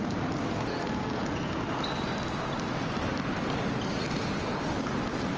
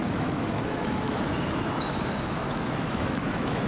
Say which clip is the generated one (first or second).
second